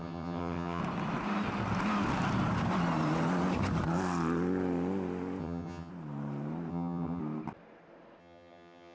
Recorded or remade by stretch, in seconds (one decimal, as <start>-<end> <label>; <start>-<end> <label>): 0.0-0.8 remade; 0.8-5.4 recorded; 5.4-5.9 remade; 5.9-6.7 recorded; 6.7-7.2 remade; 7.2-8.2 recorded; 8.2-8.9 remade